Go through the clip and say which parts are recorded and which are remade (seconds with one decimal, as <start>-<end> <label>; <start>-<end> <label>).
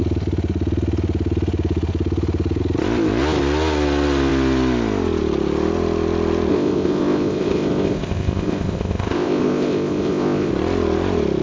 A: 0.0-6.5 recorded; 6.5-10.5 remade; 10.5-11.4 recorded